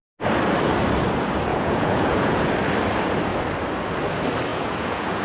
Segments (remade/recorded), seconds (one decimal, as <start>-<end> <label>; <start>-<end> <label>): 0.0-1.5 recorded; 1.5-2.5 remade; 2.5-4.5 recorded; 4.5-5.2 remade

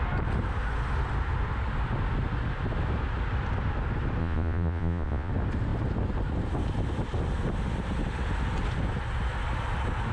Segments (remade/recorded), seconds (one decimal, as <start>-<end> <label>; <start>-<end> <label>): 0.0-4.2 recorded; 4.2-5.3 remade; 5.3-10.1 recorded

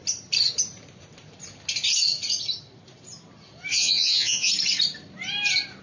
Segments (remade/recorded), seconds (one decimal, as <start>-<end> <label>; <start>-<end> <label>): 0.0-3.7 recorded; 3.7-4.5 remade; 4.5-5.8 recorded

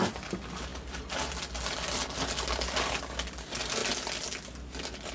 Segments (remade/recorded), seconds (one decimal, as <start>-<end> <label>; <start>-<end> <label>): 0.0-5.1 recorded

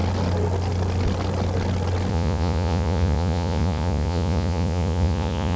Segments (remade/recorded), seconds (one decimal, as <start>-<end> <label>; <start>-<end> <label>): 0.0-2.1 recorded; 2.1-5.6 remade

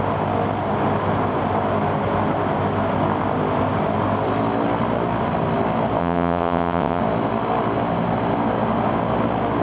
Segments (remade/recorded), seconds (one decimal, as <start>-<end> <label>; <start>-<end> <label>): 0.0-6.0 recorded; 6.0-7.0 remade; 7.0-9.6 recorded

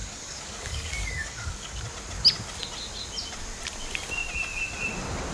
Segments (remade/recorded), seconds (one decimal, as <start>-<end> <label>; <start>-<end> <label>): 0.0-1.8 remade; 1.8-5.3 recorded